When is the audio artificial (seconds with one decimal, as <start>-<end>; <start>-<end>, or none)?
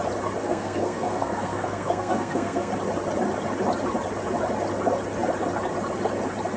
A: 0.4-2.7